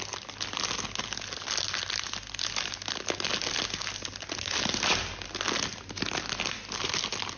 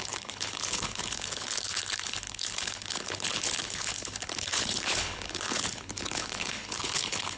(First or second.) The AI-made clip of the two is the second